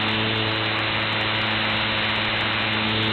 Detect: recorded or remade recorded